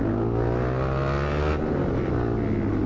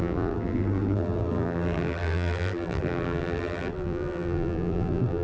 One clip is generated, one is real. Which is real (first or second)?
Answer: first